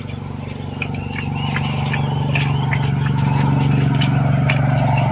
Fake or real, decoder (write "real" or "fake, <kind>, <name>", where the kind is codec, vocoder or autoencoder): real